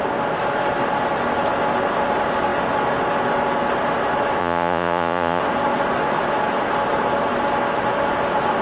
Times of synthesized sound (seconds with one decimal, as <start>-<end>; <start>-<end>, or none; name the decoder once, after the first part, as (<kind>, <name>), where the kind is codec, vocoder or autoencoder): 4.4-5.4 (vocoder, Vocos)